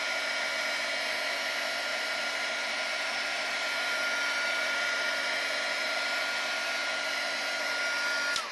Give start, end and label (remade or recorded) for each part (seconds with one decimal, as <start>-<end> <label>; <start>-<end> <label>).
0.0-1.9 recorded; 1.9-6.2 remade; 6.2-8.5 recorded